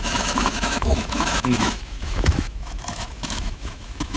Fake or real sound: fake